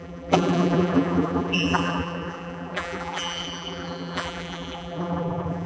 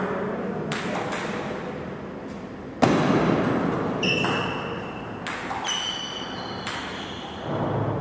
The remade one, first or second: first